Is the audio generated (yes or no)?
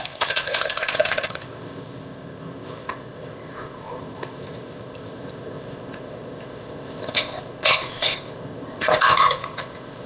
yes